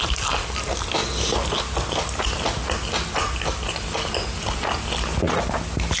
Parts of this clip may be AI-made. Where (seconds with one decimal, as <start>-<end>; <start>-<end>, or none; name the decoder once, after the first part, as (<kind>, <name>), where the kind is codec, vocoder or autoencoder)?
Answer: none